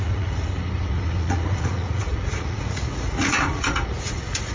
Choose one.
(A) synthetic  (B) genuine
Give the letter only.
A